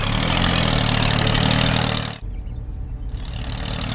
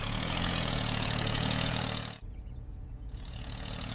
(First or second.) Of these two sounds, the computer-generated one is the second